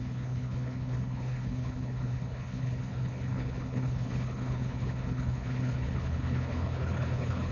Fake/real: fake